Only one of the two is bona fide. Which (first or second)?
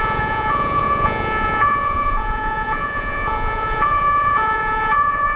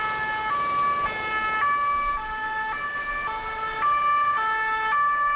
second